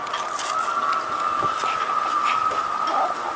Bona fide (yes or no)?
yes